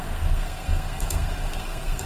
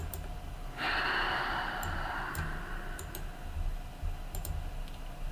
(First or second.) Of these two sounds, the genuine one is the second